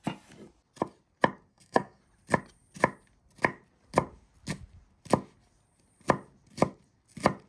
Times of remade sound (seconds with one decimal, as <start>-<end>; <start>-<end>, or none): 1.5-2.0